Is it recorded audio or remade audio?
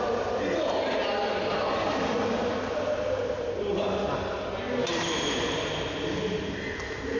recorded